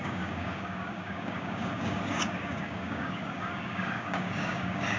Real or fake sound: fake